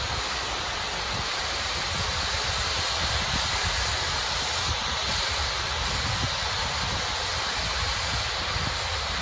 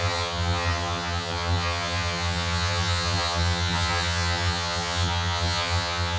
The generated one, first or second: second